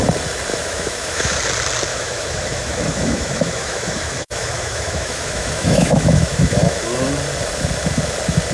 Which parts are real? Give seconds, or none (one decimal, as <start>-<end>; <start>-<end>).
0.0-0.5; 1.4-1.9; 6.8-8.5